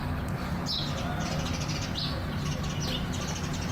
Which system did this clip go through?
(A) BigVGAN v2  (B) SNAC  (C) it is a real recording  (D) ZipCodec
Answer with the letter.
C